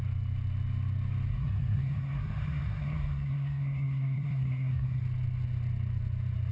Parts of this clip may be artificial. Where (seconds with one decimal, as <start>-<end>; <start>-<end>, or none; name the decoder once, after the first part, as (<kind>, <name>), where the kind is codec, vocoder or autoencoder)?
1.3-5.0 (codec, SNAC)